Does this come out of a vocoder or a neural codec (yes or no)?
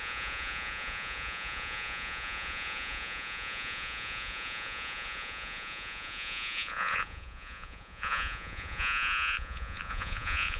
yes